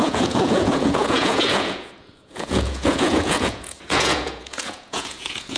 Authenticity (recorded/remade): remade